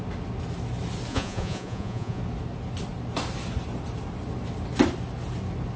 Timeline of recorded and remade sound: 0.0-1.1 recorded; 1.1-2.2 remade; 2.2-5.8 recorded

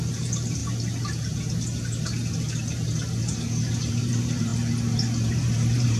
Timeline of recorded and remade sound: 0.0-0.6 remade; 0.6-3.8 recorded; 3.8-4.5 remade; 4.5-5.3 recorded; 5.3-6.0 remade